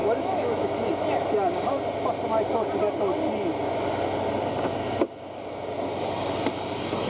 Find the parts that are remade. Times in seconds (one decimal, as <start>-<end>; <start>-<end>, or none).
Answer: 0.0-0.9